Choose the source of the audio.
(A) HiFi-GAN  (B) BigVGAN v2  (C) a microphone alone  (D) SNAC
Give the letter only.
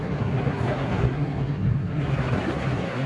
D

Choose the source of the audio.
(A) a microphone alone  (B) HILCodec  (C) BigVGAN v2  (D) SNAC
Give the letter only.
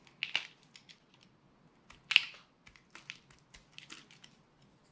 A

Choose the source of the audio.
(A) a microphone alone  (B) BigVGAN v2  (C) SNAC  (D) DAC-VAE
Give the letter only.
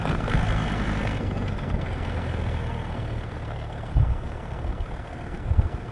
C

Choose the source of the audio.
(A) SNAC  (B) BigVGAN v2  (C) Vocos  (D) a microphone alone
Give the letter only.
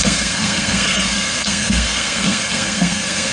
A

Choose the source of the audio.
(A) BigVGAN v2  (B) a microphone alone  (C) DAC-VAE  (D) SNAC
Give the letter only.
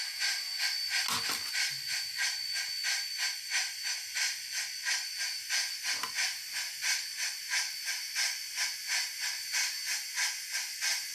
B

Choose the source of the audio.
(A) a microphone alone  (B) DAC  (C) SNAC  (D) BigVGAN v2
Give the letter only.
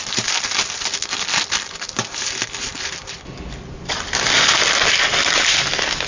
A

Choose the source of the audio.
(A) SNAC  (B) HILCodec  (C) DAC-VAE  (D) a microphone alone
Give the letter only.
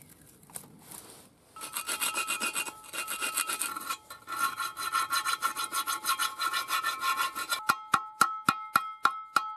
D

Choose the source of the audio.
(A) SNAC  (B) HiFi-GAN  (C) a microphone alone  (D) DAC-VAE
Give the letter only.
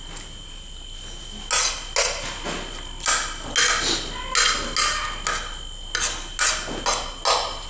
C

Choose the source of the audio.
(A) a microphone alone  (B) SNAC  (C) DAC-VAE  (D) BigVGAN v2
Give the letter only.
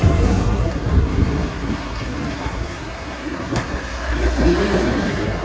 B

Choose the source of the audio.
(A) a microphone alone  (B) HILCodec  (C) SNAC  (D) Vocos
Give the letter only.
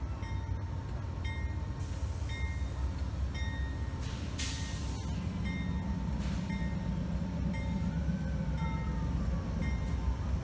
A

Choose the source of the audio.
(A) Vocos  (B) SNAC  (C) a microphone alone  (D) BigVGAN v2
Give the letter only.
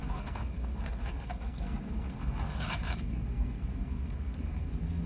B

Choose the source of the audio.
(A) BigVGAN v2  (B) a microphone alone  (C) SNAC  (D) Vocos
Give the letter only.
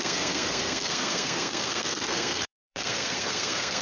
C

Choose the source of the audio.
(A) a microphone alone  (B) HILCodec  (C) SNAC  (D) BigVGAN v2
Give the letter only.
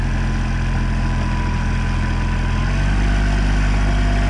A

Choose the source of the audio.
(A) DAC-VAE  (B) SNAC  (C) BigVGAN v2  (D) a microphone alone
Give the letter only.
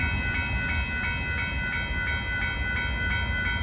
D